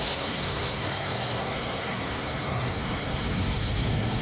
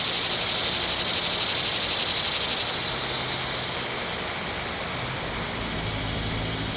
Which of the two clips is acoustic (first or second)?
second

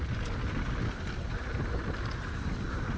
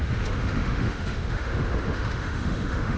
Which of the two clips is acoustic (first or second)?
first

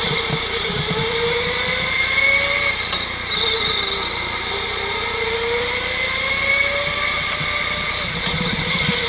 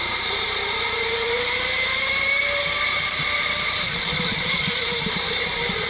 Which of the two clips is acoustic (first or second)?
first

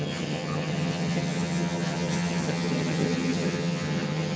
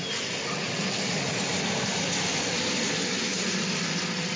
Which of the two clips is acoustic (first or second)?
second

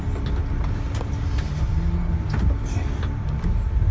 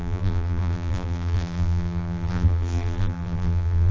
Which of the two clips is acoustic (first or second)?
first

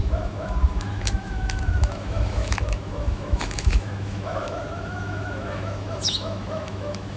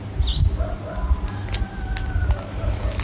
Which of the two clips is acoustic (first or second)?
second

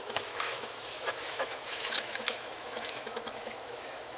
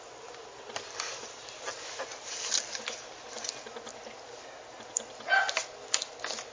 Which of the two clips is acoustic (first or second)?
second